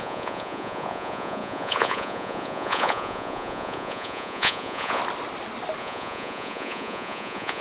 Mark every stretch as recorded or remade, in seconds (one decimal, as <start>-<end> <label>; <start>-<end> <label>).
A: 0.0-5.0 remade; 5.0-5.8 recorded; 5.8-7.6 remade